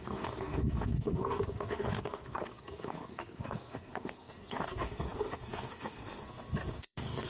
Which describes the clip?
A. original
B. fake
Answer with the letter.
B